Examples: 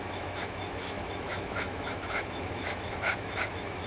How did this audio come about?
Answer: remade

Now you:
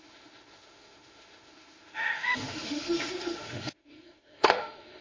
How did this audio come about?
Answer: remade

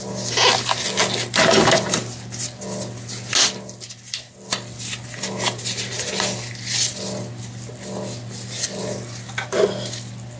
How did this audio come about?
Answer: recorded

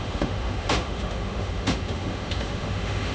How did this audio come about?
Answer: remade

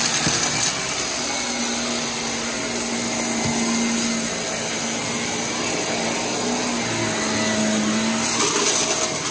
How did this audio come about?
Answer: recorded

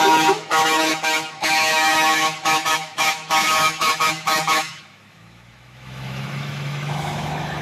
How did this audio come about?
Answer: remade